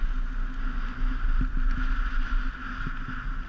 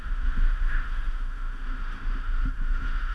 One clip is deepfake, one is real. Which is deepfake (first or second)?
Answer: second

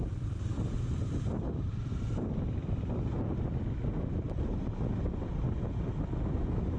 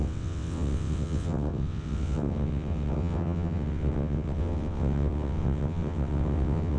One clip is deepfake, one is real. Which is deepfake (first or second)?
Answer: second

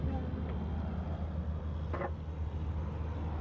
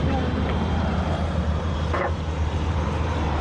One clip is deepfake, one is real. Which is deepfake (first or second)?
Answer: second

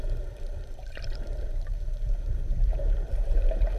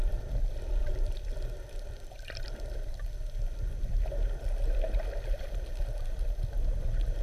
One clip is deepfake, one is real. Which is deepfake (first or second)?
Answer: first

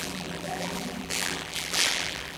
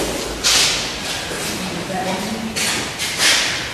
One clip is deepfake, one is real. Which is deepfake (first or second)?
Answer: first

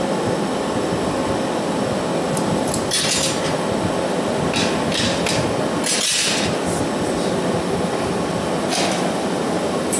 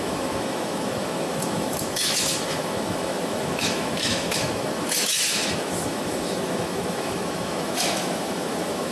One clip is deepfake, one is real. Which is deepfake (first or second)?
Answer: second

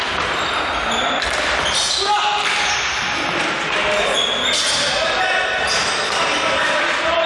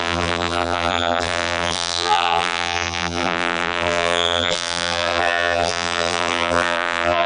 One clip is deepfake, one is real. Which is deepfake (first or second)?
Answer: second